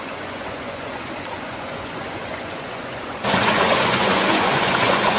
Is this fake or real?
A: fake